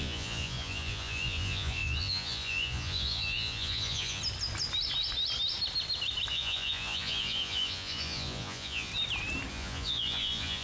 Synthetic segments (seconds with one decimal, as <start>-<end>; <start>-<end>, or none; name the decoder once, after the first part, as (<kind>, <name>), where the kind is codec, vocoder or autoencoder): 0.0-4.2 (vocoder, Vocos); 6.3-8.9; 9.5-10.6